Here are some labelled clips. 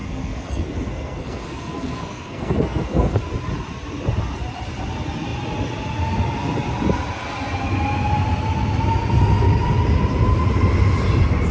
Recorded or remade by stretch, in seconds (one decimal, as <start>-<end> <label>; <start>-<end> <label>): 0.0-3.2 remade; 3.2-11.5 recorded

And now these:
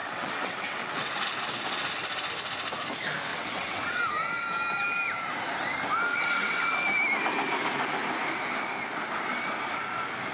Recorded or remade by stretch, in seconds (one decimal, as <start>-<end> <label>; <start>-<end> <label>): 0.0-1.1 remade; 1.1-3.3 recorded; 3.3-4.0 remade; 4.0-6.1 recorded; 6.1-6.6 remade; 6.6-10.3 recorded

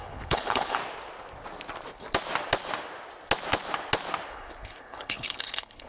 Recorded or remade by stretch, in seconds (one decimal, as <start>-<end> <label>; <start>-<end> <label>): 0.0-0.8 remade; 0.8-4.3 recorded; 4.3-5.9 remade